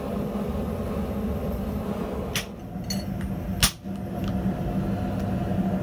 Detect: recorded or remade recorded